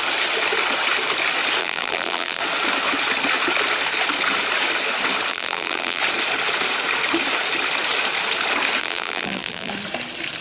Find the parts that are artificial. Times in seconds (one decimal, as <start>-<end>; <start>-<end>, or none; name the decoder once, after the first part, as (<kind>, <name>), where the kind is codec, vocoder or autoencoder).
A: 1.6-2.4 (vocoder, BigVGAN v2); 5.3-6.0; 8.8-9.7